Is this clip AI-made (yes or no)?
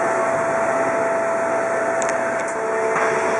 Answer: no